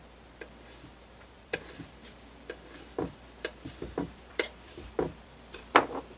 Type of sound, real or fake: fake